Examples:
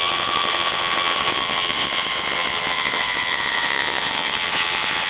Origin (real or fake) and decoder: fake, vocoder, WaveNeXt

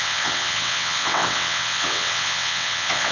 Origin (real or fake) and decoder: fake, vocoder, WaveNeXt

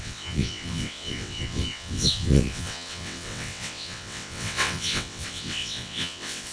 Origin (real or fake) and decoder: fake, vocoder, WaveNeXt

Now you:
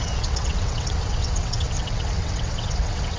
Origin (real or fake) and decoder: fake, vocoder, WaveNeXt